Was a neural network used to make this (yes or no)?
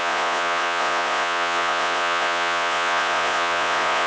yes